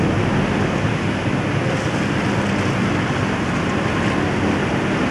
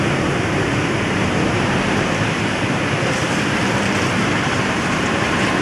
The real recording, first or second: first